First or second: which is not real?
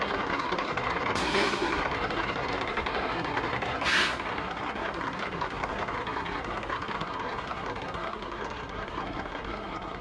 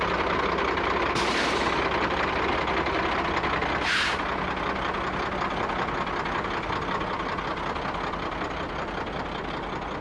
first